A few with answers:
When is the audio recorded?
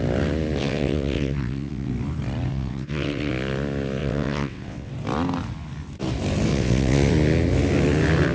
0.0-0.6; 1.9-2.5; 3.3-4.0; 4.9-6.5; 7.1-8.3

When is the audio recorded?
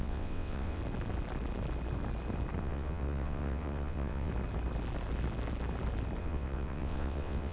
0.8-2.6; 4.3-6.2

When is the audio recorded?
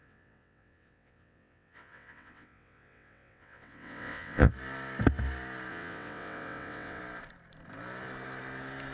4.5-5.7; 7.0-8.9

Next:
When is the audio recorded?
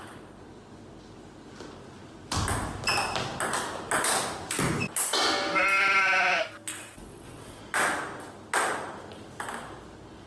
0.0-6.7; 7.6-10.3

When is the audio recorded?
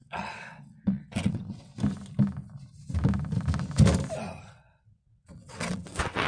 1.7-4.5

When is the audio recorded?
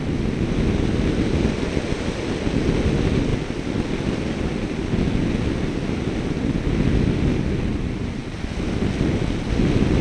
0.0-10.0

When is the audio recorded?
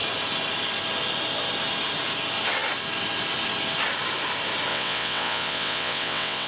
0.0-4.7